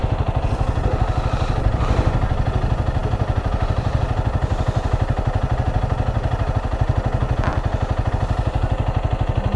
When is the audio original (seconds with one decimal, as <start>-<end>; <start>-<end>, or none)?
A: 0.0-9.6